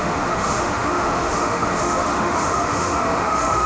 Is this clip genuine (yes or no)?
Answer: no